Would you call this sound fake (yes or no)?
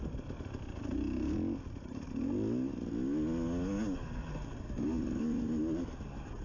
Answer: no